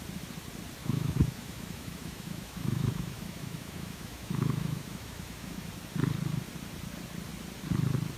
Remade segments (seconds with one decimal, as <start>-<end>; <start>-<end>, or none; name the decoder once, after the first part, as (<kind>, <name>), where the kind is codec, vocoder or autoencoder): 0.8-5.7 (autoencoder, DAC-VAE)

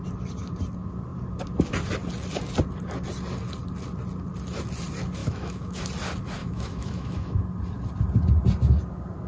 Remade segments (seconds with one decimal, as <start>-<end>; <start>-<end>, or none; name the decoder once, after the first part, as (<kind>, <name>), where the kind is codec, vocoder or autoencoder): 5.2-5.9 (autoencoder, DAC-VAE); 6.4-7.4

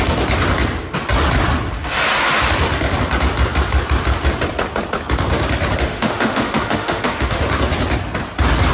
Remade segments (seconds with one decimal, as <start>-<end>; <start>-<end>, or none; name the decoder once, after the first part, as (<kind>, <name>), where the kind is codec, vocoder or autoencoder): 5.8-7.4 (autoencoder, DAC-VAE)